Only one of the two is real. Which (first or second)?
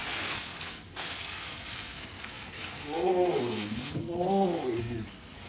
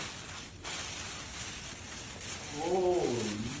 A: second